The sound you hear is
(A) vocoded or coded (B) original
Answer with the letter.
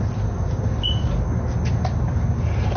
B